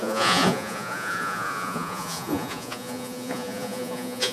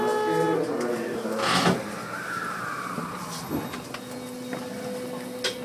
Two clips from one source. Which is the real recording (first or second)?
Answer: second